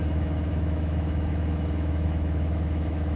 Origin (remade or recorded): remade